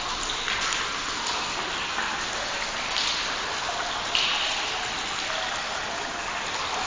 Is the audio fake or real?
real